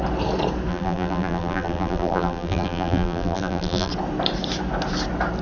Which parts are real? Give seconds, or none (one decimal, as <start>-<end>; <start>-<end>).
0.0-0.7; 3.9-5.4